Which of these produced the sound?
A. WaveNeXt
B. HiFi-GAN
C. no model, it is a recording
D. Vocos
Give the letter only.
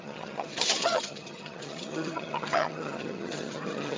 B